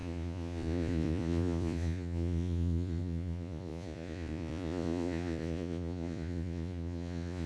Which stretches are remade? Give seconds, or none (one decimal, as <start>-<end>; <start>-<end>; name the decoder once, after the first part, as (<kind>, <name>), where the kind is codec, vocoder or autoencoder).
0.0-7.5 (vocoder, Vocos)